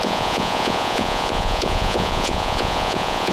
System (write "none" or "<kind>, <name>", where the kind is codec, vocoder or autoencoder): vocoder, Vocos